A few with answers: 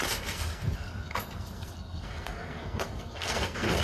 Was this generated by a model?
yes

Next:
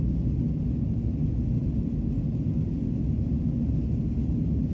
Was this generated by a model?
no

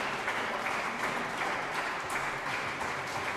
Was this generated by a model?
no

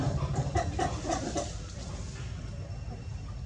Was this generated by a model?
no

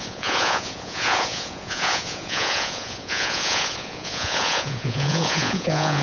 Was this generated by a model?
yes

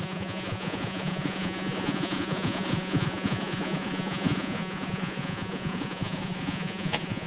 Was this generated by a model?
yes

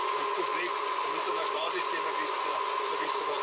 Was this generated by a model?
yes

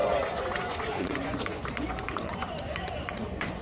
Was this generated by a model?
yes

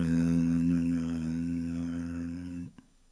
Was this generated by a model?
yes